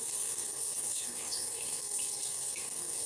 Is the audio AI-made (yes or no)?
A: yes